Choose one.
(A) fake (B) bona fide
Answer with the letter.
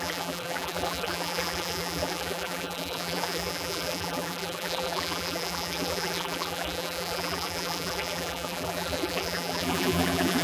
A